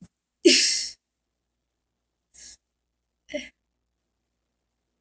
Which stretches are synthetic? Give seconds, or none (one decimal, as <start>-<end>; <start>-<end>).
0.8-3.5